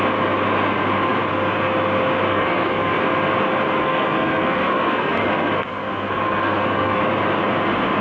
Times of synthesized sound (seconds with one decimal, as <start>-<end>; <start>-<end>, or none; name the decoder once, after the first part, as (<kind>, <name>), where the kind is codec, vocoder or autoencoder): 2.3-3.0 (codec, SNAC); 3.8-7.0